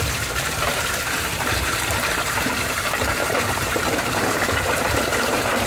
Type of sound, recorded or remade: remade